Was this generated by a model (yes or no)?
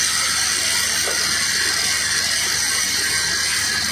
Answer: no